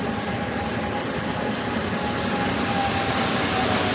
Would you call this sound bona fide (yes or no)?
yes